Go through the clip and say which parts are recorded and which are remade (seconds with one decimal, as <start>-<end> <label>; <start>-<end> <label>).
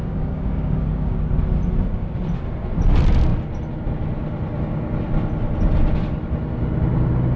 0.0-1.2 remade; 1.2-7.4 recorded